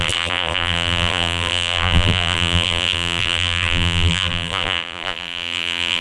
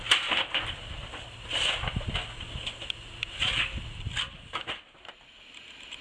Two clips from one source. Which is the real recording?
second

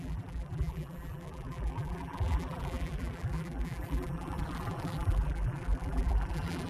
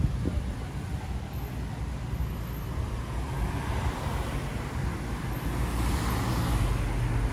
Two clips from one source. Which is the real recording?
second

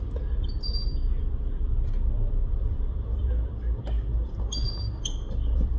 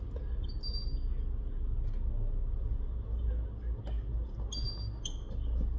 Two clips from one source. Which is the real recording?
second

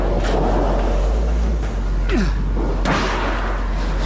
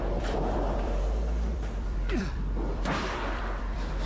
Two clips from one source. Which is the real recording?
first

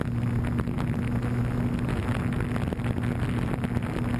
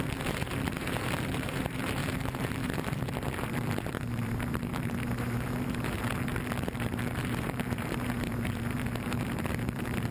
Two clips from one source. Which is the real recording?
first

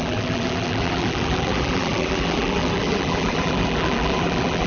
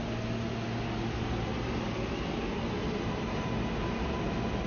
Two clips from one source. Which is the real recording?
second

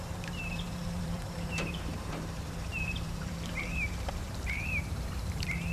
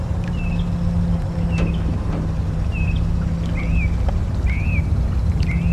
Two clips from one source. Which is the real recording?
second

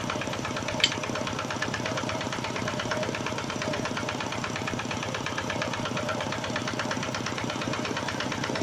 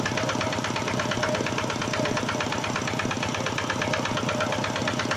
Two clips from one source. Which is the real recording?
second